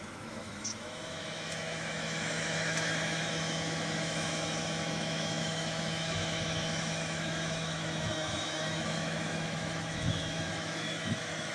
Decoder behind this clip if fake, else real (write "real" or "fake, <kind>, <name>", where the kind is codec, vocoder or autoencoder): fake, autoencoder, DAC-VAE